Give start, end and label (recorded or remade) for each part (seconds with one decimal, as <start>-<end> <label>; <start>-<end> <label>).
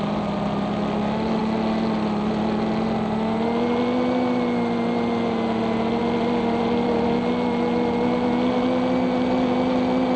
0.0-10.2 recorded